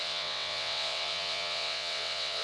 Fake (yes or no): yes